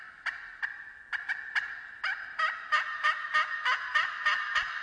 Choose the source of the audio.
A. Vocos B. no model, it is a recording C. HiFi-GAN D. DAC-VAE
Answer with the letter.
B